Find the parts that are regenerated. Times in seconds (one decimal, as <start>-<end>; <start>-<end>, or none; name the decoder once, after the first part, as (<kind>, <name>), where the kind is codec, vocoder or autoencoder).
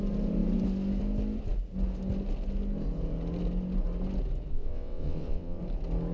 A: 4.5-5.6 (vocoder, WaveNeXt)